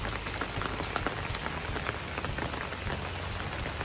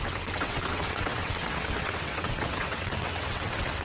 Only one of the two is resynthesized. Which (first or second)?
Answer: second